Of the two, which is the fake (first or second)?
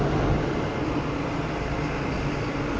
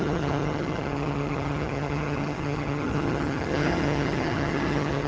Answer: second